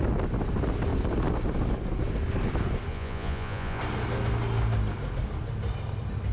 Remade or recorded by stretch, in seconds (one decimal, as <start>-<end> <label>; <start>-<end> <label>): 0.0-2.9 recorded; 2.9-3.8 remade; 3.8-6.3 recorded